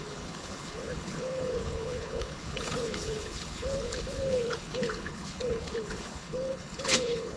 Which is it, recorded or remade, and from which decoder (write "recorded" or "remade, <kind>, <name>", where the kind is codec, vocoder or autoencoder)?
remade, codec, HILCodec